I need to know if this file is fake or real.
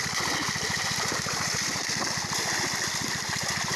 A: real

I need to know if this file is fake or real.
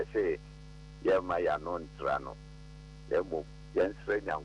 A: real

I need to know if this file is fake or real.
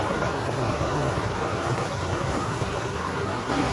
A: fake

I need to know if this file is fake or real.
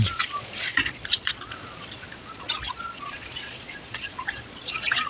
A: fake